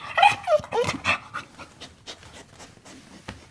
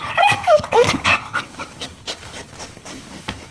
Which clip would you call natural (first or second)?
first